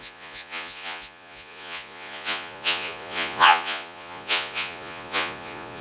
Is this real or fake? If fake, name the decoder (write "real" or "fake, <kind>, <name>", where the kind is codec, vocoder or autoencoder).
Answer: fake, vocoder, Vocos